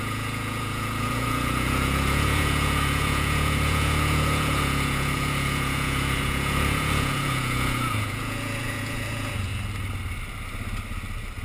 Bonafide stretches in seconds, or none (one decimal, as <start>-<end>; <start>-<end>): 9.5-11.4